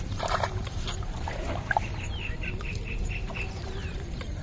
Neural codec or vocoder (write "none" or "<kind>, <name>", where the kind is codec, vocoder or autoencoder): vocoder, BigVGAN v2